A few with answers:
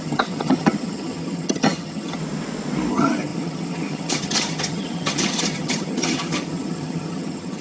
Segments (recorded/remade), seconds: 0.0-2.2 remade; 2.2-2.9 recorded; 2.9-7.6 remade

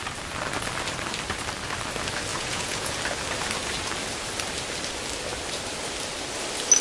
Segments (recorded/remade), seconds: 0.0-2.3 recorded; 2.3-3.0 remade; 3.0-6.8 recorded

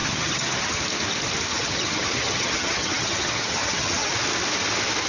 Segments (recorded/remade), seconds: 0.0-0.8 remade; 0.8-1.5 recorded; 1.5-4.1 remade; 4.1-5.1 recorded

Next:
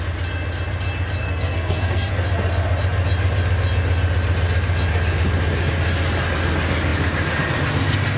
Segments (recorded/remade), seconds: 0.0-1.2 recorded; 1.2-2.1 remade; 2.1-8.2 recorded

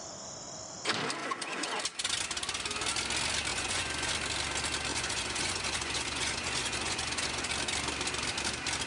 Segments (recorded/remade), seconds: 0.0-1.2 recorded; 1.2-1.8 remade; 1.8-3.5 recorded; 3.5-4.1 remade; 4.1-4.9 recorded; 4.9-7.5 remade; 7.5-8.9 recorded